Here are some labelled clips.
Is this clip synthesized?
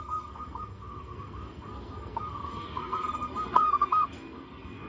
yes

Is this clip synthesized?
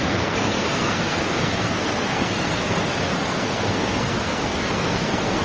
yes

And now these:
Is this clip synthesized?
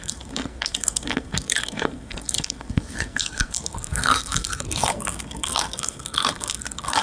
yes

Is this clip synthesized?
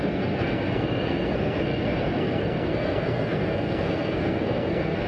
yes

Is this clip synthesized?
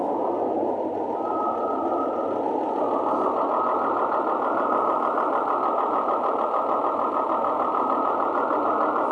no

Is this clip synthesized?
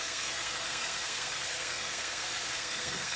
yes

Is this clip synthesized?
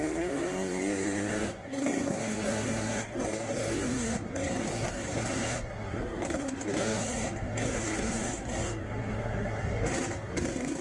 yes